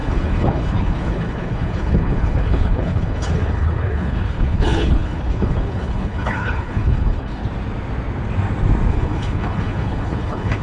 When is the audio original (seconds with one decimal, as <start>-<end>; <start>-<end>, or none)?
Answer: 7.4-8.9